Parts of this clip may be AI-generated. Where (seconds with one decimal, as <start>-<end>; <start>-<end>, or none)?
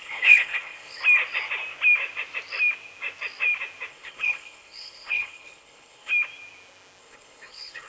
0.0-1.0; 3.9-6.1; 7.0-7.9